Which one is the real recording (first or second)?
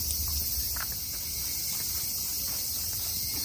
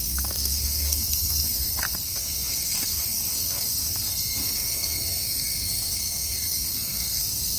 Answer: first